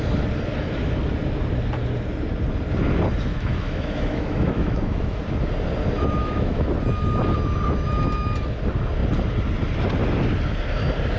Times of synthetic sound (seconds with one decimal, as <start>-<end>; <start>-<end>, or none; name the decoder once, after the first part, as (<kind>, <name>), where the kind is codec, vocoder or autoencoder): 3.3-5.2 (autoencoder, DAC-VAE); 6.2-6.7